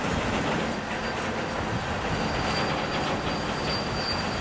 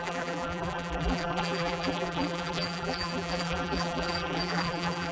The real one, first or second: first